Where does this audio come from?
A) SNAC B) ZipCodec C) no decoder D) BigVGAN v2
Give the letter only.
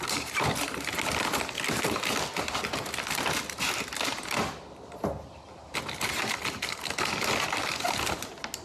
C